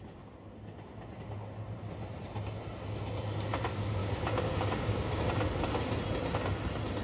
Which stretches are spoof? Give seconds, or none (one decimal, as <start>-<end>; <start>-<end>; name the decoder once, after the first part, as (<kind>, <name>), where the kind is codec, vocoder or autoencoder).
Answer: 4.0-5.2 (codec, DAC)